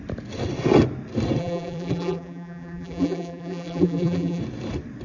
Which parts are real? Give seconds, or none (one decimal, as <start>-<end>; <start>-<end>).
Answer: 0.0-1.4; 4.4-5.0